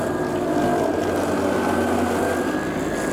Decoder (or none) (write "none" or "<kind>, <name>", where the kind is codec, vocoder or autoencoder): none